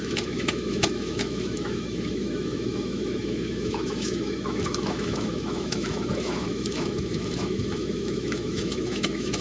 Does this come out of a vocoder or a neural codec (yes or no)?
yes